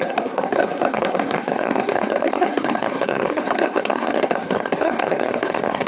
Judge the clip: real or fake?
fake